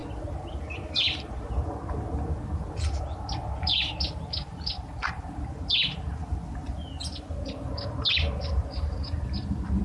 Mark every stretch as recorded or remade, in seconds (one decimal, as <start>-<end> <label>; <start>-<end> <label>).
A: 0.0-9.8 recorded